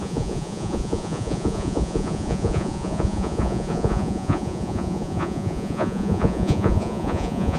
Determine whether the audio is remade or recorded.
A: remade